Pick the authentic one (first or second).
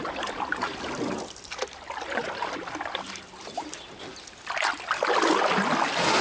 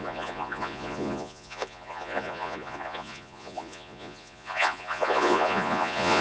first